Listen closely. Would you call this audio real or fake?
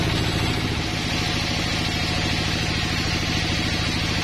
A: real